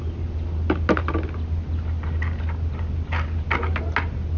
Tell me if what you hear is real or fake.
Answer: real